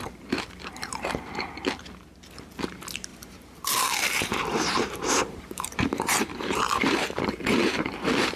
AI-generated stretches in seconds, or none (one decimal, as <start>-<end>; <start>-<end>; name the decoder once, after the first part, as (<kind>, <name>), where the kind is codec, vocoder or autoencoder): 3.1-8.4 (vocoder, BigVGAN v2)